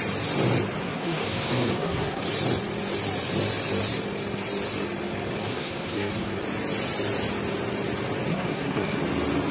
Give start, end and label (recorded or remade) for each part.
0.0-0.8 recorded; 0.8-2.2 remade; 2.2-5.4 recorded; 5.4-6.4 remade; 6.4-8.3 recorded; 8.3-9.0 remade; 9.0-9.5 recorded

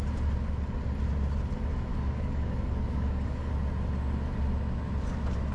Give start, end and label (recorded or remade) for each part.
0.0-1.9 recorded; 1.9-3.5 remade; 3.5-5.5 recorded

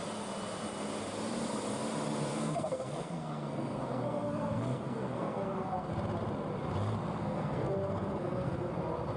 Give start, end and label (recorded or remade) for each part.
0.0-2.3 recorded; 2.3-5.9 remade; 5.9-7.2 recorded; 7.2-8.7 remade; 8.7-9.2 recorded

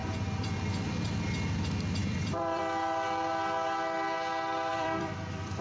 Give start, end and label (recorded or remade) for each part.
0.0-2.0 recorded; 2.0-2.6 remade; 2.6-4.7 recorded; 4.7-5.6 remade